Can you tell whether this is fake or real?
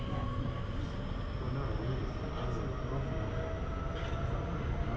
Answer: real